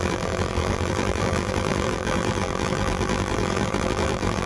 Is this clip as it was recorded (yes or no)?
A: no